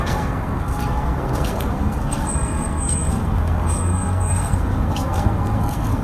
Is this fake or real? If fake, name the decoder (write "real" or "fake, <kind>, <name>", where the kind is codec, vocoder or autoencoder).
fake, codec, SNAC